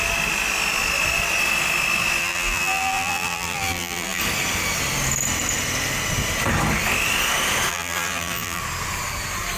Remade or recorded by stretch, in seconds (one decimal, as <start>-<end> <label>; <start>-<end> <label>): 0.0-2.2 recorded; 2.2-4.2 remade; 4.2-7.7 recorded; 7.7-8.6 remade; 8.6-9.6 recorded